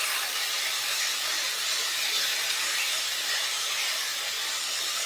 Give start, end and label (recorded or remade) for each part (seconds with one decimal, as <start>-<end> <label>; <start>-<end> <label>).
0.0-5.1 recorded